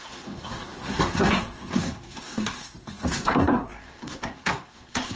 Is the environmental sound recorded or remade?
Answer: remade